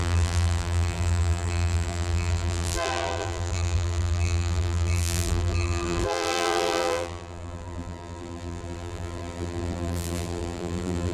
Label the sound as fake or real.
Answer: fake